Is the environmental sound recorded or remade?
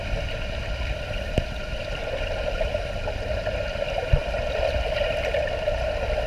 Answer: recorded